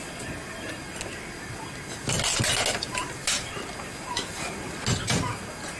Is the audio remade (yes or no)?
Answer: no